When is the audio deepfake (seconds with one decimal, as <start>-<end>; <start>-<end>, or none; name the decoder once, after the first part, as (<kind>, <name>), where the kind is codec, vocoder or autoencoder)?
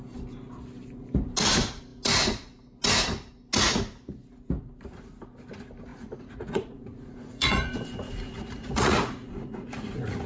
5.9-10.3 (vocoder, Vocos)